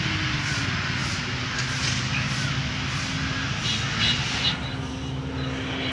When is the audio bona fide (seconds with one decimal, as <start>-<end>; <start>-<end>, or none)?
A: 0.0-5.9